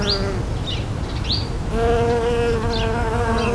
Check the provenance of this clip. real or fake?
real